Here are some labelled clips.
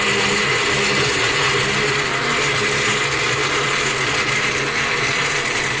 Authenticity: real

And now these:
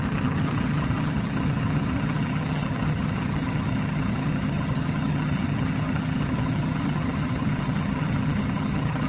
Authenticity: fake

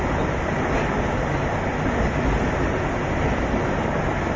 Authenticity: real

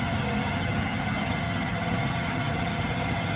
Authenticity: fake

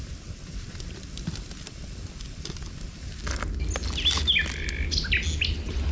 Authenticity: real